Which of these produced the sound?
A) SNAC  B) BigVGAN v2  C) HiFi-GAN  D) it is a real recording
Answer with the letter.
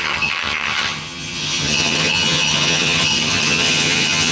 C